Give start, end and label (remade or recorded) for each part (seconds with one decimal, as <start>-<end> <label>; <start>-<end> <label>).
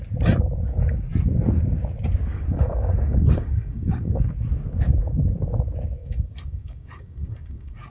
0.0-2.3 recorded; 2.3-4.3 remade; 4.3-6.0 recorded; 6.0-7.9 remade